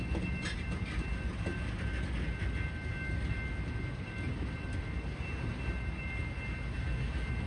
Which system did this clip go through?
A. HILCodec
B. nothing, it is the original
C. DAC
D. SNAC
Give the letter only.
B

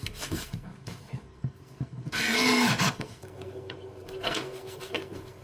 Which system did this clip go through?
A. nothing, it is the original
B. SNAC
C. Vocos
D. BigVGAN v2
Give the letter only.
B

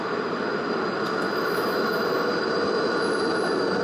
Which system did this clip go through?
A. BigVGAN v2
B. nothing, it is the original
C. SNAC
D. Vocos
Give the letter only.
B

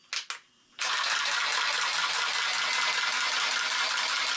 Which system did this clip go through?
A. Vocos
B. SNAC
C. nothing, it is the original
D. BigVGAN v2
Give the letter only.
C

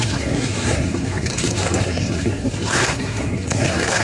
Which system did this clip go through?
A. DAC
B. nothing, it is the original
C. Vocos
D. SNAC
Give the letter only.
D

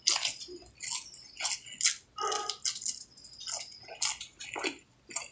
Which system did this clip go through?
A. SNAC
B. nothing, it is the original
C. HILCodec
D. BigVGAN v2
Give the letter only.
B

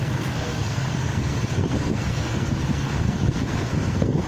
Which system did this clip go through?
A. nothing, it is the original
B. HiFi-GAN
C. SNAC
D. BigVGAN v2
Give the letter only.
C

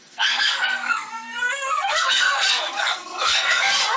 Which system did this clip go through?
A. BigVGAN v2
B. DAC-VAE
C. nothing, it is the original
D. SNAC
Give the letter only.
D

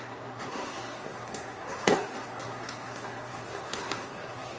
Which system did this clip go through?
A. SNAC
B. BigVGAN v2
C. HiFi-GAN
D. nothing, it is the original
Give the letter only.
A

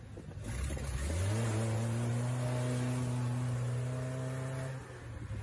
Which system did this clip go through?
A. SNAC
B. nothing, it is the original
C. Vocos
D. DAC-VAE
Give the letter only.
B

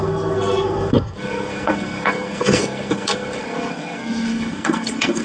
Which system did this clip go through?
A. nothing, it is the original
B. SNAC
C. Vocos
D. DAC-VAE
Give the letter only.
B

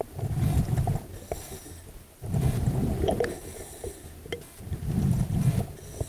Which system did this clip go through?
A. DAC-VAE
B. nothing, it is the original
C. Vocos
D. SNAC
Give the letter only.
B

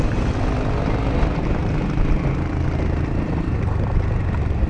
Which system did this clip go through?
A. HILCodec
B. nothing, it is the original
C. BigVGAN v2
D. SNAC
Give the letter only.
B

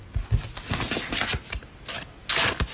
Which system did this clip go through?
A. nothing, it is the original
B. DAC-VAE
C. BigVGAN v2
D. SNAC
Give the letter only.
A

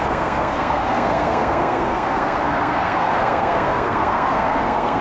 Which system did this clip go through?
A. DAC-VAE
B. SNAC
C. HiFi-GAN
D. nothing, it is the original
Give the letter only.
B